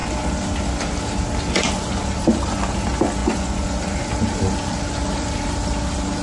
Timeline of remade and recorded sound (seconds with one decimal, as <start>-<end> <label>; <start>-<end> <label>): 0.0-3.2 recorded; 3.2-3.8 remade; 3.8-6.2 recorded